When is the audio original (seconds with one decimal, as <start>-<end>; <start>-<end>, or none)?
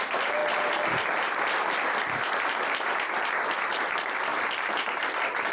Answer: 0.4-3.7